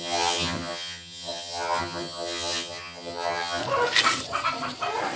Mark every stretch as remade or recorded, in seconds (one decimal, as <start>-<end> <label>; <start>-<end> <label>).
0.0-3.6 remade; 3.6-5.2 recorded

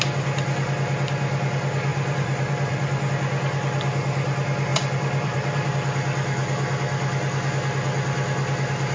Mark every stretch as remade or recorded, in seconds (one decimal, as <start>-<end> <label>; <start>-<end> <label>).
0.0-1.9 recorded; 1.9-3.1 remade; 3.1-4.7 recorded; 4.7-5.7 remade; 5.7-8.9 recorded

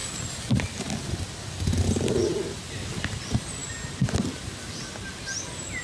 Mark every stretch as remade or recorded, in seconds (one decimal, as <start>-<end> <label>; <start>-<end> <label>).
0.0-5.8 recorded

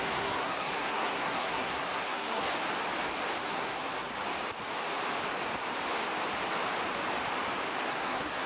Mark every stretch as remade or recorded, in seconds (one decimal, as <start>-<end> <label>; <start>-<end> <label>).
0.0-2.5 remade; 2.5-3.4 recorded; 3.4-4.1 remade; 4.1-7.9 recorded; 7.9-8.5 remade

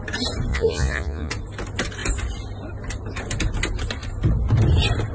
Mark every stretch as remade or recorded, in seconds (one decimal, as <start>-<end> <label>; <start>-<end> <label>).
0.0-0.5 recorded; 0.5-1.3 remade; 1.3-5.1 recorded

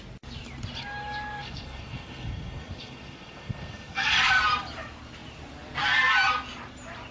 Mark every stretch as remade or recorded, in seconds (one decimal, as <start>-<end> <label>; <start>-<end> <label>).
0.0-1.4 recorded; 1.4-4.4 remade; 4.4-7.1 recorded

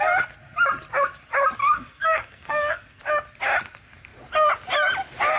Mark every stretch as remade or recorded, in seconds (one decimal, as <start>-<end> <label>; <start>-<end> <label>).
0.0-1.6 recorded; 1.6-3.0 remade; 3.0-5.4 recorded